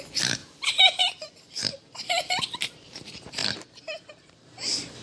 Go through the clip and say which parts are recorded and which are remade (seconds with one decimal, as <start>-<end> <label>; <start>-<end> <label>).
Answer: 0.0-5.0 remade